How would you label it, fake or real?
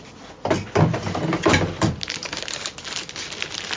real